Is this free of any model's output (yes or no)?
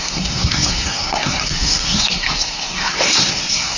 no